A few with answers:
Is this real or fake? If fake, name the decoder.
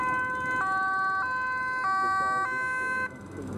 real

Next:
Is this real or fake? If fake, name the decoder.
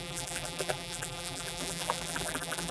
fake, vocoder, BigVGAN v2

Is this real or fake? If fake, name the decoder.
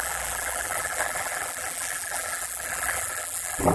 fake, vocoder, BigVGAN v2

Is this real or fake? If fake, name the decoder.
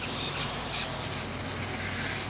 real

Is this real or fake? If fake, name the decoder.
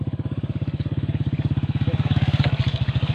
fake, codec, DAC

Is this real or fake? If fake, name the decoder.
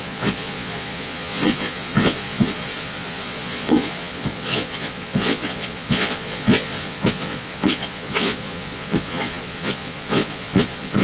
fake, vocoder, Vocos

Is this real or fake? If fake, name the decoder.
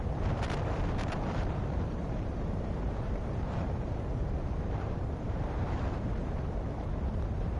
fake, vocoder, BigVGAN v2